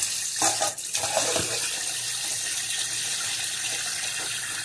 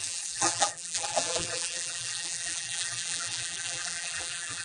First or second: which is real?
first